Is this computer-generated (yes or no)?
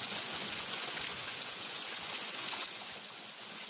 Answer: yes